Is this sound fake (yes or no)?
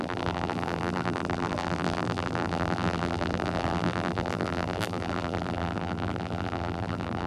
yes